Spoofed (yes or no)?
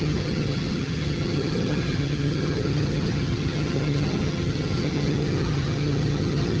yes